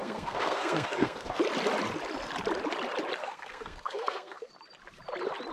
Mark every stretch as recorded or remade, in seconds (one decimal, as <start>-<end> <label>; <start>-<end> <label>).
0.0-1.4 remade; 1.4-3.2 recorded; 3.2-4.5 remade; 4.5-5.5 recorded